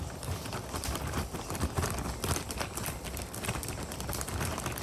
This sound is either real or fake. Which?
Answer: fake